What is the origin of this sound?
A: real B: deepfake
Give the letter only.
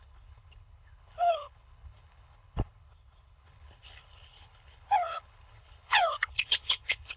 B